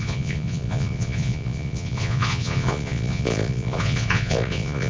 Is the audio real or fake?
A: fake